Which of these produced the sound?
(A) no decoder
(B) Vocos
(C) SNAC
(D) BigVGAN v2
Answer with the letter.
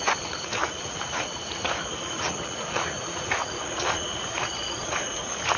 B